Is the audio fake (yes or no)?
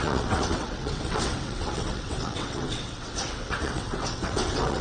yes